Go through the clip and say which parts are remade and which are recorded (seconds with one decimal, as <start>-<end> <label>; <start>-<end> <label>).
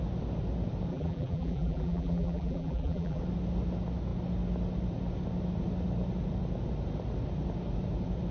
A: 0.0-0.9 recorded; 0.9-3.2 remade; 3.2-8.3 recorded